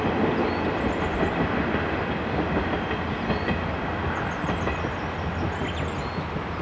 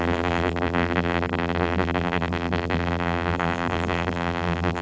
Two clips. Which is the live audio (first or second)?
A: first